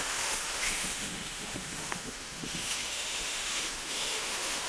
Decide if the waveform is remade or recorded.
remade